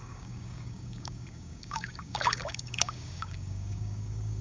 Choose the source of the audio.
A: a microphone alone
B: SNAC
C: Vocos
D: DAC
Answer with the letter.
D